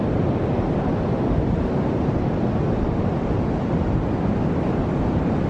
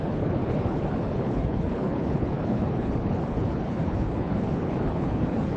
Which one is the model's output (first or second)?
second